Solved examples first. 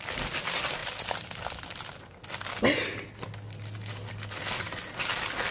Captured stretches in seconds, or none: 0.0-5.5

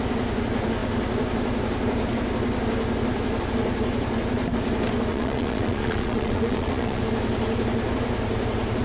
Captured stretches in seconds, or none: 0.0-5.1; 7.0-8.8

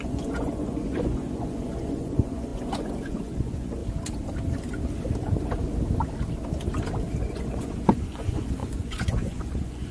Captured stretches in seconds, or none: 3.8-7.2

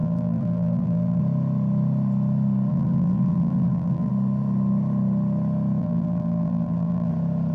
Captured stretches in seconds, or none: 1.2-2.7; 4.1-5.8; 7.1-7.5